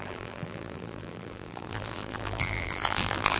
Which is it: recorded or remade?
remade